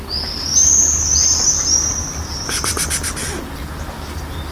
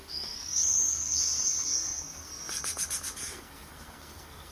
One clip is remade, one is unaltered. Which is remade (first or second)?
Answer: second